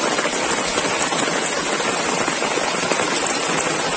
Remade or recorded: recorded